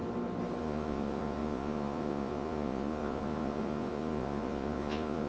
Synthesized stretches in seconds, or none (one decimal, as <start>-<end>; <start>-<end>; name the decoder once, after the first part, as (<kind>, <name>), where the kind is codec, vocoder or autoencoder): 0.6-5.3 (vocoder, Vocos)

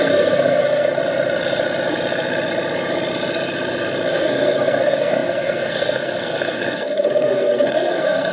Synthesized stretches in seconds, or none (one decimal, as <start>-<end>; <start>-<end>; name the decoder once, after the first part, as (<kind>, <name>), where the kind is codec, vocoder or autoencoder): 0.0-1.0 (codec, SNAC); 4.1-8.3

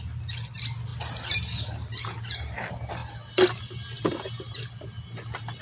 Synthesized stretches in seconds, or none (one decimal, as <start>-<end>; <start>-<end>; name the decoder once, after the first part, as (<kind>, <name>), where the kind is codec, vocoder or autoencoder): none

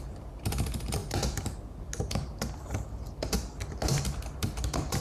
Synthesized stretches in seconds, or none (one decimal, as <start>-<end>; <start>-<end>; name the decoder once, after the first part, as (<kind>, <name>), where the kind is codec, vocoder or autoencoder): none

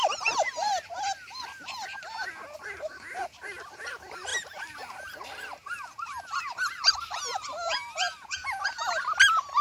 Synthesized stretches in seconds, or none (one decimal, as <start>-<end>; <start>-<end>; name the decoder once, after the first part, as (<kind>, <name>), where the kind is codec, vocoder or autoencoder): none

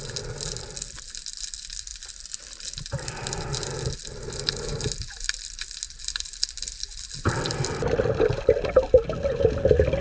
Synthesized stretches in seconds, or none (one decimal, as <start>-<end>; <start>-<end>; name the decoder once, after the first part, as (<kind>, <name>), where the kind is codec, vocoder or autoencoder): none

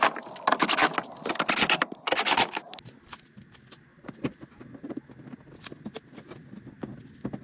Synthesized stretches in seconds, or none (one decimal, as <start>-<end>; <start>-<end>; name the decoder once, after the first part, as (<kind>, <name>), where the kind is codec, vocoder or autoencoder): none